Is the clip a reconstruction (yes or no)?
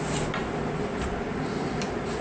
no